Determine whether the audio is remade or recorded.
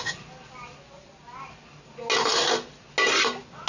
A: recorded